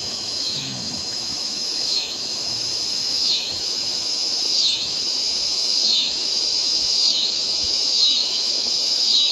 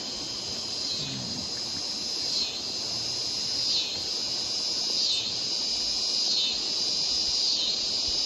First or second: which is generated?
first